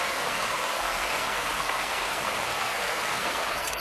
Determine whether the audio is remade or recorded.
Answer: remade